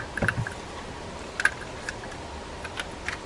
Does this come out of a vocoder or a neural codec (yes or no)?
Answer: no